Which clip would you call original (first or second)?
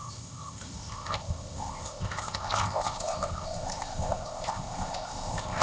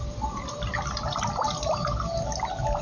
second